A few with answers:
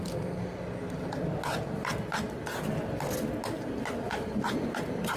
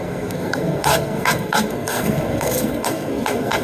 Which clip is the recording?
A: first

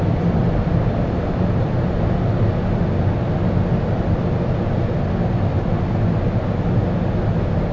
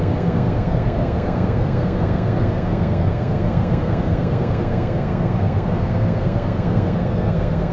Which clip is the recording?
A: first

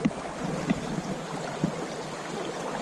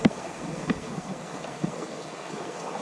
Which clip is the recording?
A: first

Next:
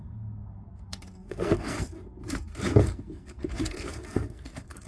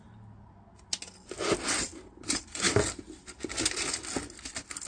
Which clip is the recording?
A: second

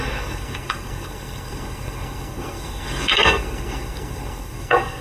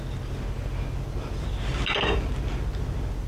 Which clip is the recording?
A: second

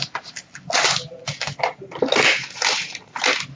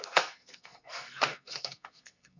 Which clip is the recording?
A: first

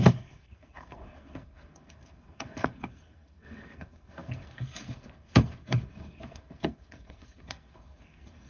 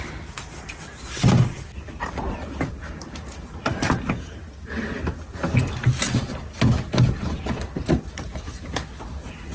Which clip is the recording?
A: second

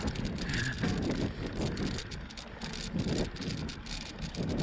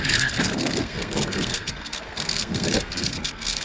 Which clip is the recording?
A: first